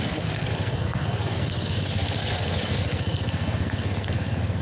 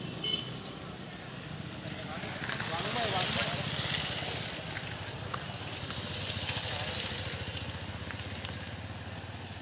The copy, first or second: first